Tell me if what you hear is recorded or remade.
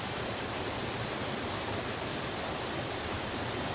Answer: remade